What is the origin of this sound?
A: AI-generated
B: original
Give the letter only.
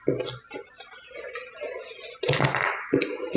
B